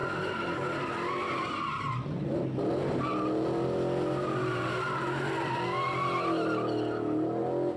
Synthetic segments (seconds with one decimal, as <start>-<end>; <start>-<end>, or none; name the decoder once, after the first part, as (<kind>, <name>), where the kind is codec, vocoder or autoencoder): none